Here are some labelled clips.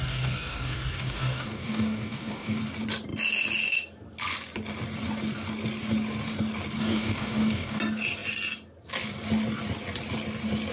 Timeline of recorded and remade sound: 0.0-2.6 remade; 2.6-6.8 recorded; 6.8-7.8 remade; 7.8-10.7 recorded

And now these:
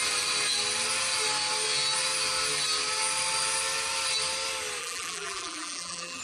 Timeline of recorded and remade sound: 0.0-4.8 recorded; 4.8-6.2 remade